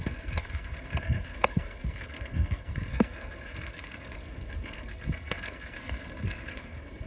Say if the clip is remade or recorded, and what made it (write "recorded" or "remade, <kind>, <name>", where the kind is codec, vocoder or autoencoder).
remade, codec, SNAC